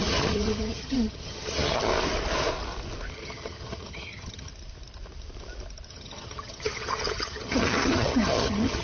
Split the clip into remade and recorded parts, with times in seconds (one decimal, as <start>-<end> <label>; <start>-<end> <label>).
0.0-1.9 remade; 1.9-3.1 recorded; 3.1-4.5 remade; 4.5-5.9 recorded; 5.9-8.8 remade